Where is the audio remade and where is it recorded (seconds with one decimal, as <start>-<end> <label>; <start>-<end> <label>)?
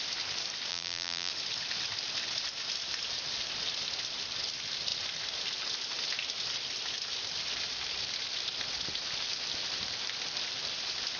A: 0.0-0.7 recorded; 0.7-1.3 remade; 1.3-11.2 recorded